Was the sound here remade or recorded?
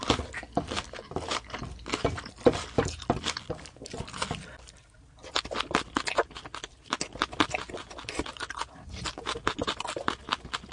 recorded